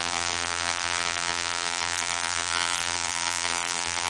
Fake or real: fake